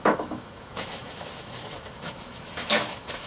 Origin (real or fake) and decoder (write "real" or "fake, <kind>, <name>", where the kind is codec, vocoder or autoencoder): fake, autoencoder, DAC-VAE